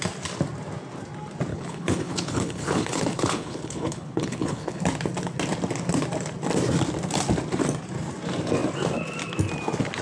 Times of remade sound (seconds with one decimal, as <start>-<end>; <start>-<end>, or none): 1.5-4.8